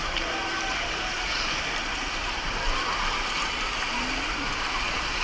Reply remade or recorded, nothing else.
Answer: remade